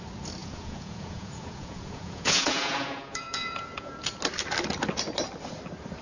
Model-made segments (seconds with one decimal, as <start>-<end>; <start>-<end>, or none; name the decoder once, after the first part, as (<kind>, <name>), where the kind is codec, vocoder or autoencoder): 0.4-4.0 (vocoder, Vocos)